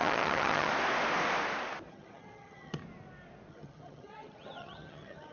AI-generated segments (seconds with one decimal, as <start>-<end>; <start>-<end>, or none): 0.0-0.7; 1.9-2.8; 3.5-5.3